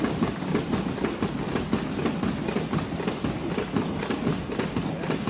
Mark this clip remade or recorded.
recorded